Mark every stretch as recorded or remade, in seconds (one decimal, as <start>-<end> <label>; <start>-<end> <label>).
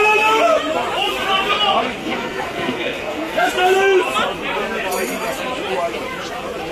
0.0-2.0 recorded; 2.0-3.5 remade; 3.5-6.7 recorded